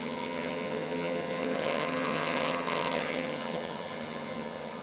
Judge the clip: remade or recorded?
remade